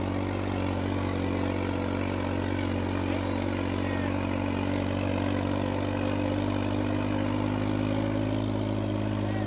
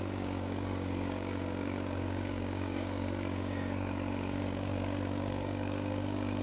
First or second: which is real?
first